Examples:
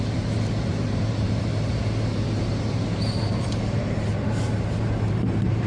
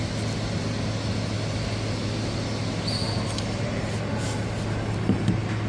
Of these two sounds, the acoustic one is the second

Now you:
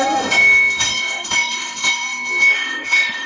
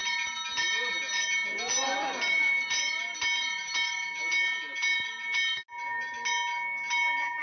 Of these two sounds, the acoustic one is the second